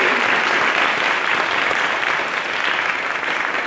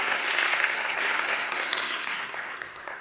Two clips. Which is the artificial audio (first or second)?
second